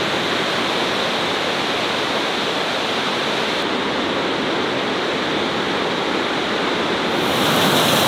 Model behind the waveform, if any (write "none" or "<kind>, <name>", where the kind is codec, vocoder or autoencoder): none